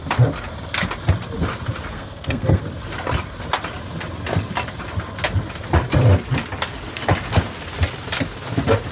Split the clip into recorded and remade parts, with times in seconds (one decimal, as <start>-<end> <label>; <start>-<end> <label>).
0.0-1.9 recorded; 1.9-2.6 remade; 2.6-8.9 recorded